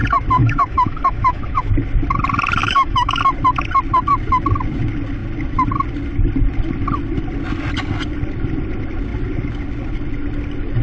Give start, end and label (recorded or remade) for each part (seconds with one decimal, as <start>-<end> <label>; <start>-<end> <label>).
0.0-0.4 recorded; 0.4-1.7 remade; 1.7-2.6 recorded; 2.6-3.2 remade; 3.2-10.8 recorded